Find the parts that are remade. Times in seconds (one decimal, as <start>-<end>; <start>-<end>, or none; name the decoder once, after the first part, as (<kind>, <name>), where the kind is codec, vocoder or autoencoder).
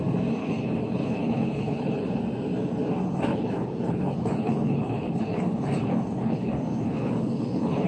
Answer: 0.4-2.2 (codec, HILCodec); 3.3-7.9